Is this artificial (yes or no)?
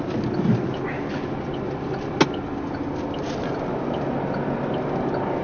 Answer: no